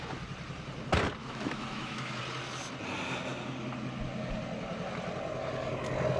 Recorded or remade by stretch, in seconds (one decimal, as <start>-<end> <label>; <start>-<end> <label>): 0.0-1.2 recorded; 1.2-2.2 remade; 2.2-6.2 recorded